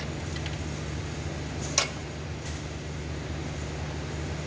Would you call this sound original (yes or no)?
yes